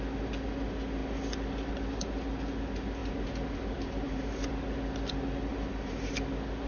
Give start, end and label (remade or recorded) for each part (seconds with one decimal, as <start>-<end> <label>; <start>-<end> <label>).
0.0-3.0 recorded; 3.0-4.5 remade; 4.5-5.5 recorded; 5.5-6.1 remade; 6.1-6.7 recorded